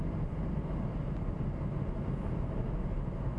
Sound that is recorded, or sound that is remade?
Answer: recorded